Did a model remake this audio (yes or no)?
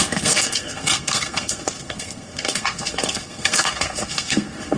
yes